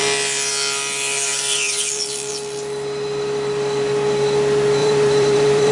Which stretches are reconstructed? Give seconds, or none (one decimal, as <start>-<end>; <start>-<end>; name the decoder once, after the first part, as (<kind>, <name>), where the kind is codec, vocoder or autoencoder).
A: 1.3-2.3 (vocoder, BigVGAN v2); 4.8-5.7